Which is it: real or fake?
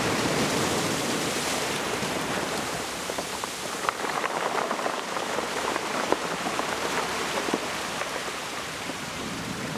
fake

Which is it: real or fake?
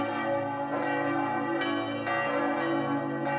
real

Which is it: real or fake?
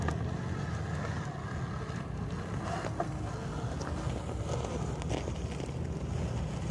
real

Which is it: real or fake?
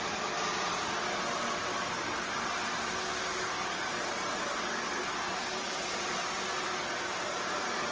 real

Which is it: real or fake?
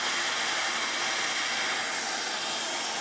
real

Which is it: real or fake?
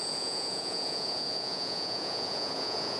fake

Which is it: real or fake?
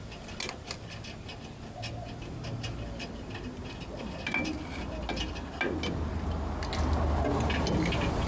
real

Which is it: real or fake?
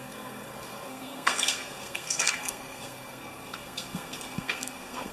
fake